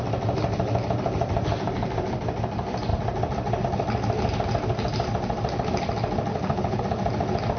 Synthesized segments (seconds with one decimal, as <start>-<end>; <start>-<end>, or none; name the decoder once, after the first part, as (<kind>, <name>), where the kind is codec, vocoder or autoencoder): 6.3-6.8 (codec, HILCodec)